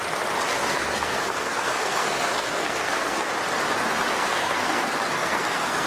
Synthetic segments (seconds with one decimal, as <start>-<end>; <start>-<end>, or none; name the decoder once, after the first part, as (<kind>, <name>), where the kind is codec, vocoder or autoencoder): 0.5-3.3 (codec, SNAC); 4.1-5.9